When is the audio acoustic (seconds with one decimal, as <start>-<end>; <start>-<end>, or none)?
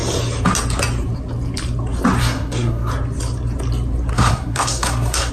0.0-2.2; 2.9-4.1